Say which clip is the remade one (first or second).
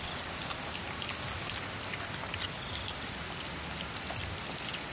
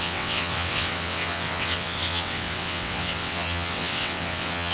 second